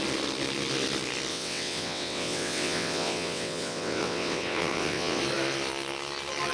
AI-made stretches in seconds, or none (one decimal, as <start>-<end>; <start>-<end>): 1.3-5.2